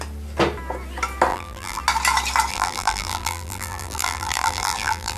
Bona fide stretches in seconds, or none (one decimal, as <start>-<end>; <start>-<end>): 0.0-1.3; 1.8-2.5